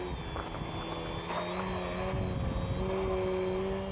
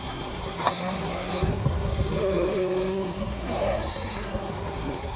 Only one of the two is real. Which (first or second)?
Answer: first